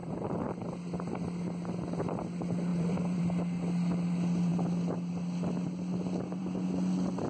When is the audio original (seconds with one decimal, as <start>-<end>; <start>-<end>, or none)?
0.5-2.7; 3.2-7.3